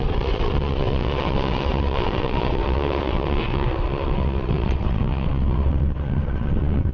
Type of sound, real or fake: fake